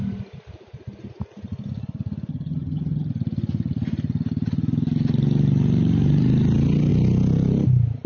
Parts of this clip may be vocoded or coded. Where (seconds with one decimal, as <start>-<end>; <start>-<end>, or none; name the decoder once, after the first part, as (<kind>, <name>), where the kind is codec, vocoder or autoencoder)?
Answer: 2.3-3.1 (vocoder, HiFi-GAN)

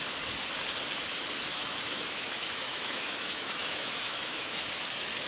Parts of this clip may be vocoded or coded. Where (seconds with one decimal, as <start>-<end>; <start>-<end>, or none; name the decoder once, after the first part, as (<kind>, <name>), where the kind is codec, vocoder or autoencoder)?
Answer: 1.5-4.7 (autoencoder, DAC-VAE)

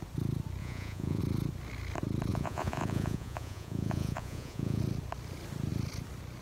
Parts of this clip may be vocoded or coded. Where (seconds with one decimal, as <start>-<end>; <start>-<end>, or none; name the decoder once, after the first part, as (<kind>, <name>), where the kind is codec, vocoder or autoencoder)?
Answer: 0.6-1.2 (vocoder, Vocos); 2.3-4.8

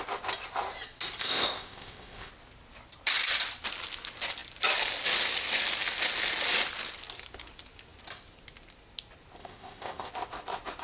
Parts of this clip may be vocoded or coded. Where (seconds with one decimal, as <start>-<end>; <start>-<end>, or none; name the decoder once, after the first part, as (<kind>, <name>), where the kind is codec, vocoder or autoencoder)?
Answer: 1.2-2.3 (codec, ZipCodec); 9.4-10.1

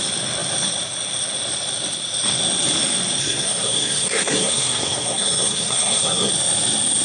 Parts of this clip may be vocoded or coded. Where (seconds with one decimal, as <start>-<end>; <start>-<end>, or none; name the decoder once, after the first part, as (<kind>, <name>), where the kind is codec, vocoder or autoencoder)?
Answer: 3.2-6.3 (codec, SNAC)

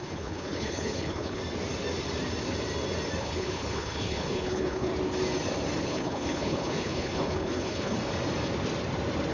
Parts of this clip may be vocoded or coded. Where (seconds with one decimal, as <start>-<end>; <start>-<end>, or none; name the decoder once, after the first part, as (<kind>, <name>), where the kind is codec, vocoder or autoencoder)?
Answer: 0.0-1.4 (codec, HILCodec); 3.2-4.9; 5.8-8.0

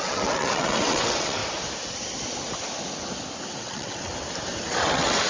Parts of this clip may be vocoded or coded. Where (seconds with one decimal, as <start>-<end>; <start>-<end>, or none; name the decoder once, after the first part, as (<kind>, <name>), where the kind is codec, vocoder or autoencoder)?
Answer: 0.0-1.4 (vocoder, WaveNeXt); 3.6-4.1; 4.7-5.3